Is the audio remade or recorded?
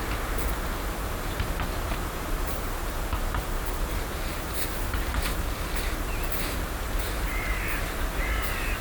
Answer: recorded